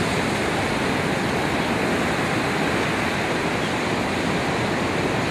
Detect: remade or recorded recorded